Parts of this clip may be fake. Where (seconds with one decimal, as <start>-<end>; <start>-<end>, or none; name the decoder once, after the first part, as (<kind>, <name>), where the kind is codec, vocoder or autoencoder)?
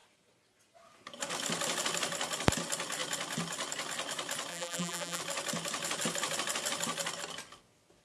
4.5-5.2 (vocoder, BigVGAN v2)